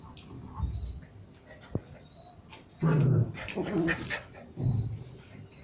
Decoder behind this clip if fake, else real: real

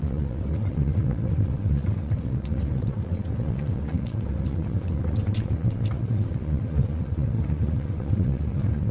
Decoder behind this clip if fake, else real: fake, vocoder, WaveNeXt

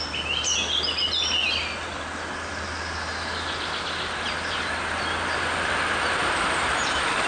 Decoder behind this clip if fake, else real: real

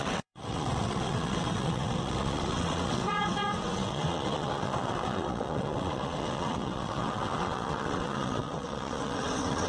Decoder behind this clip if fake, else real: fake, vocoder, WaveNeXt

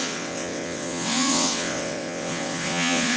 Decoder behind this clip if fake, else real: fake, vocoder, WaveNeXt